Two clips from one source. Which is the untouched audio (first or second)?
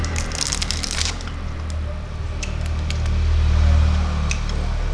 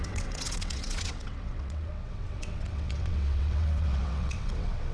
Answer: first